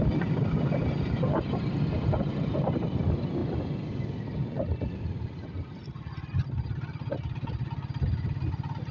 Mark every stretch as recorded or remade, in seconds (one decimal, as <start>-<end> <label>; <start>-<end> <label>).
0.0-8.9 recorded